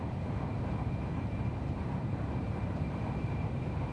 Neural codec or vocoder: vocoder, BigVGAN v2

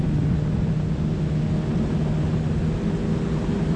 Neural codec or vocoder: none